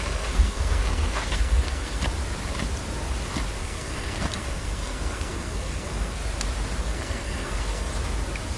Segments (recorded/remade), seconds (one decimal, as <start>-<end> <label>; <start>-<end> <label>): 0.0-2.0 remade; 2.0-3.6 recorded; 3.6-6.2 remade; 6.2-6.8 recorded; 6.8-7.9 remade; 7.9-8.6 recorded